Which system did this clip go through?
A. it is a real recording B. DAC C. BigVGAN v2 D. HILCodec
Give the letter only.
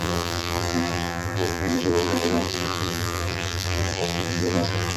C